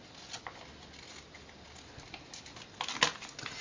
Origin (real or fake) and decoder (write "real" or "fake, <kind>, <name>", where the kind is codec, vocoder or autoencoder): real